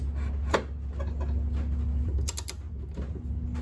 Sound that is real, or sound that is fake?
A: real